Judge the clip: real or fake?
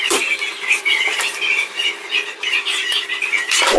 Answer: fake